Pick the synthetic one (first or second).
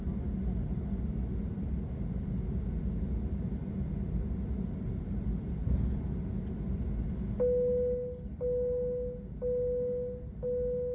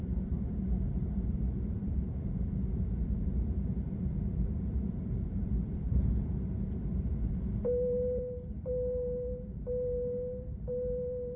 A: second